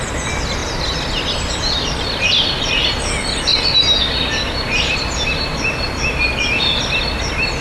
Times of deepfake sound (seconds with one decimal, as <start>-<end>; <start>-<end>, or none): none